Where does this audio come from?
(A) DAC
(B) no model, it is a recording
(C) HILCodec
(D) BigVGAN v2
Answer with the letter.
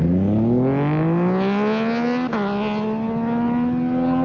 B